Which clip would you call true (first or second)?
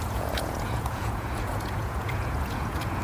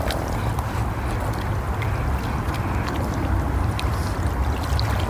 second